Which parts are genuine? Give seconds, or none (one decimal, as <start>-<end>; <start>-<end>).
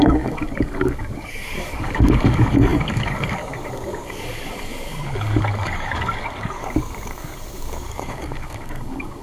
none